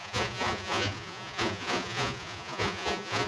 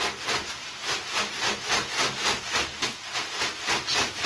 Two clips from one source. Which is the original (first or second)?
second